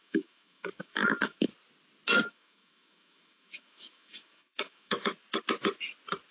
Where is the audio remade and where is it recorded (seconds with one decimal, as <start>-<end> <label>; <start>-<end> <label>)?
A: 0.0-1.5 remade; 1.5-2.2 recorded; 2.2-5.1 remade; 5.1-6.3 recorded